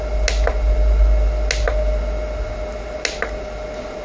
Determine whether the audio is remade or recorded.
recorded